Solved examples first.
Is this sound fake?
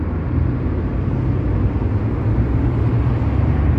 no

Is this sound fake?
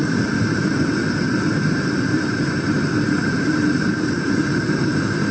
yes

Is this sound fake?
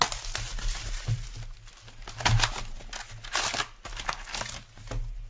no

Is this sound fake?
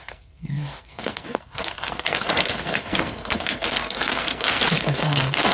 yes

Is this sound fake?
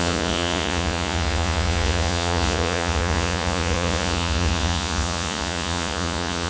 yes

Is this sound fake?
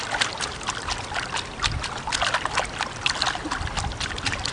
no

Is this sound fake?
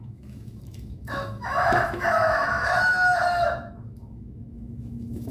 yes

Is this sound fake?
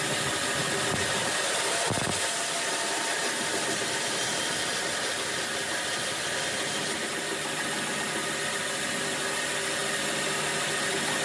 no